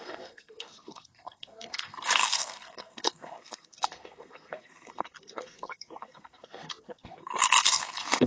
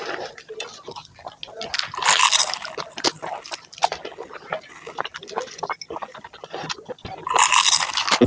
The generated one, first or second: first